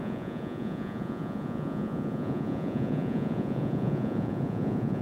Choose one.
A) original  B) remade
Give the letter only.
B